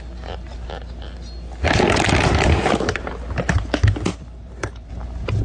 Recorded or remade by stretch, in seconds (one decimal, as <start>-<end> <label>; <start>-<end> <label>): 0.0-4.1 recorded; 4.1-4.9 remade; 4.9-5.4 recorded